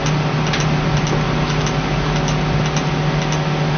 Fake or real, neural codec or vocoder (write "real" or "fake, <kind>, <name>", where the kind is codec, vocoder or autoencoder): real